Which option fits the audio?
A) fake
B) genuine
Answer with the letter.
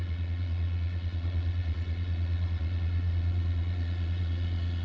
A